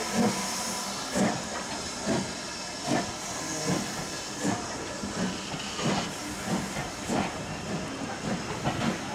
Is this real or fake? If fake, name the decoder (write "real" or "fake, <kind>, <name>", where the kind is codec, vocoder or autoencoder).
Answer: real